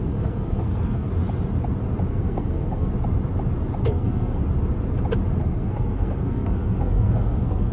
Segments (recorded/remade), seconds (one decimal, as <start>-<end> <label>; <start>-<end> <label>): 0.0-1.1 remade; 1.1-2.1 recorded; 2.1-2.9 remade; 2.9-3.8 recorded; 3.8-4.4 remade; 4.4-5.4 recorded; 5.4-7.7 remade